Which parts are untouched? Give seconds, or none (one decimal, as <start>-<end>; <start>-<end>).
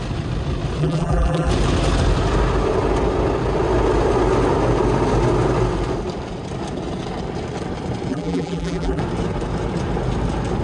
0.0-0.8; 1.5-8.1; 9.0-10.6